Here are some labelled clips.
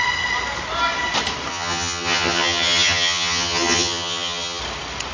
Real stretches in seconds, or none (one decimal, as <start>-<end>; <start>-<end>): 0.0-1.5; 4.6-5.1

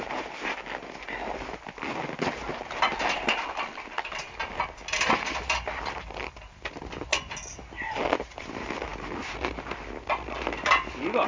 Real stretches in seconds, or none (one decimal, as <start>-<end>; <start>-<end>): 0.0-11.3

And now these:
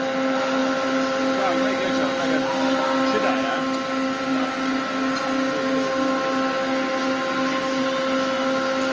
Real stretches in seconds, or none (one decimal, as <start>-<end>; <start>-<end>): 0.0-8.9